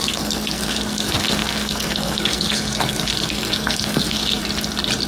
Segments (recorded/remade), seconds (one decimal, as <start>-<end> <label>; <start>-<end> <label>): 0.0-4.4 remade; 4.4-5.1 recorded